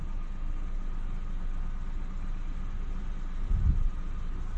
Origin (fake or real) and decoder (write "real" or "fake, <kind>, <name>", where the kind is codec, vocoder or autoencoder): real